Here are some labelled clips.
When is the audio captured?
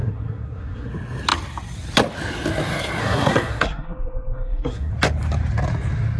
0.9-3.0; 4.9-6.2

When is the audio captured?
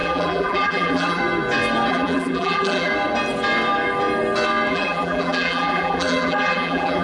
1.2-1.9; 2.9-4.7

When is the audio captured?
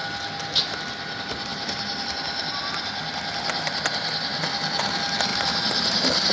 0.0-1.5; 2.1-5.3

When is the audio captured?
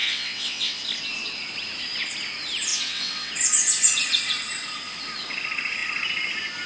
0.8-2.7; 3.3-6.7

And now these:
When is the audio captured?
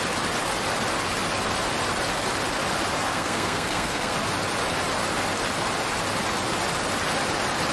0.0-3.1; 4.1-7.7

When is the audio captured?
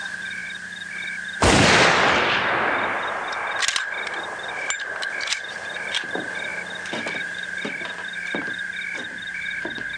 0.4-4.2; 6.5-10.0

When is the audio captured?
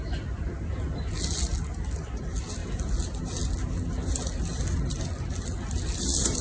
0.0-6.4